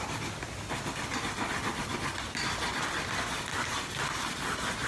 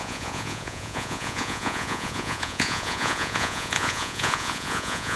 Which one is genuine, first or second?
first